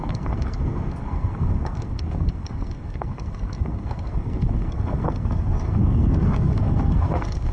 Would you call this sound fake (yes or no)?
yes